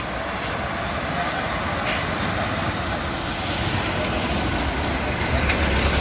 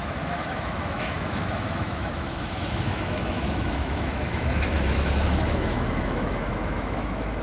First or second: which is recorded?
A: first